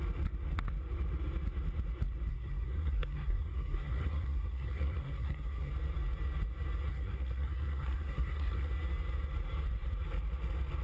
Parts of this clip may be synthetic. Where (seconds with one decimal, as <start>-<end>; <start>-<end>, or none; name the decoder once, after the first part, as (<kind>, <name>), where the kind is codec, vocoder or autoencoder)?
2.3-5.7 (codec, SNAC); 6.9-8.7